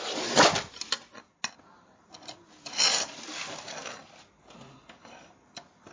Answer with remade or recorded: recorded